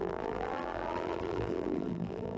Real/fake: fake